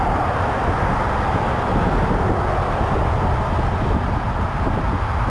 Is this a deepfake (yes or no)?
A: no